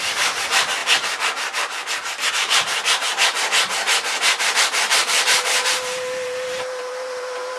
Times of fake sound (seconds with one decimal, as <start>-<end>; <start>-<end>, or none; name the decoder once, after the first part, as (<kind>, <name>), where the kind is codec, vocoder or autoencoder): 0.0-2.7 (vocoder, BigVGAN v2); 4.4-7.6